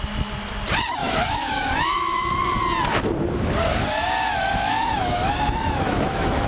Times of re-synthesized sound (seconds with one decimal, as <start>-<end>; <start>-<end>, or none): 1.0-2.4; 4.3-6.5